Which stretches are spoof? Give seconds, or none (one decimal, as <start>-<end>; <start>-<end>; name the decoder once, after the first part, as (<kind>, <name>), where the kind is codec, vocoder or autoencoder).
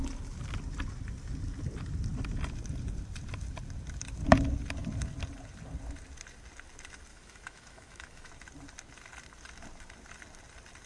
7.1-8.3 (autoencoder, DAC-VAE)